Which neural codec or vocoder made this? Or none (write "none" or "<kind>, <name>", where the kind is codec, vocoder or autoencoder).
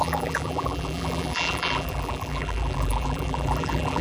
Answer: vocoder, BigVGAN v2